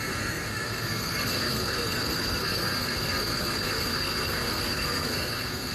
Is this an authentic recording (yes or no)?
no